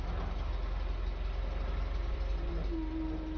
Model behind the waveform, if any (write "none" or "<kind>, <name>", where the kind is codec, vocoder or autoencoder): none